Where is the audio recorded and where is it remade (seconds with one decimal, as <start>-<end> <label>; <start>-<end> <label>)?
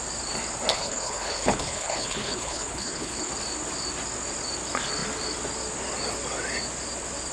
0.0-0.7 recorded; 0.7-3.3 remade; 3.3-7.3 recorded